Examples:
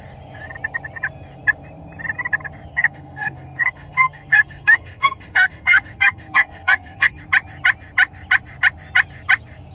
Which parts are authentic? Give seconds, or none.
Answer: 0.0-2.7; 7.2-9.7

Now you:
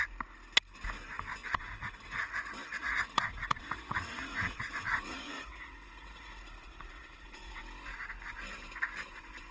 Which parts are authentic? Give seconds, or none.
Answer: 0.0-1.4; 2.2-2.8; 7.6-9.5

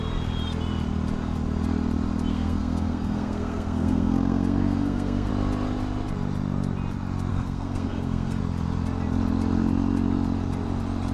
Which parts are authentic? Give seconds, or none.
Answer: 0.0-2.3; 5.3-7.3; 8.4-11.1

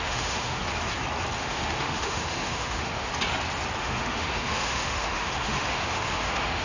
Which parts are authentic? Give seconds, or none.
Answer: 0.6-1.4; 3.1-3.8

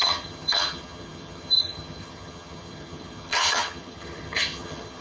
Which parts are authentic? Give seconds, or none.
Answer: none

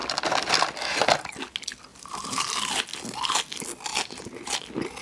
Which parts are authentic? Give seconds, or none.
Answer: 0.0-1.9; 2.5-3.9; 4.5-5.0

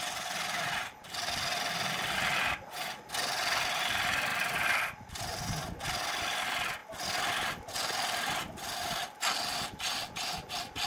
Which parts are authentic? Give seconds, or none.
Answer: 0.0-10.9